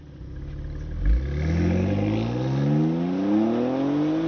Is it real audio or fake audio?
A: real